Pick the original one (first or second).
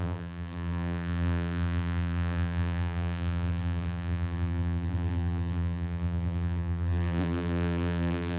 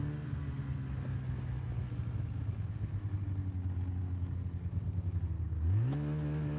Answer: second